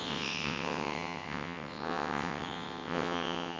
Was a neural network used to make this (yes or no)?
yes